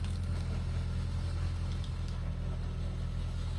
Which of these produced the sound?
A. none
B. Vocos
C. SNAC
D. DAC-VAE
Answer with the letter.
A